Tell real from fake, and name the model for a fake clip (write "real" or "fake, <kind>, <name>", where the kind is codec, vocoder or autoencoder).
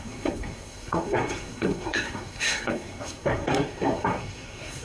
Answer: fake, codec, SNAC